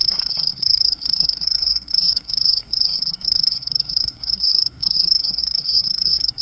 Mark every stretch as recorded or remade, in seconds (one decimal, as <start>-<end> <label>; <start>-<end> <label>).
0.0-6.4 remade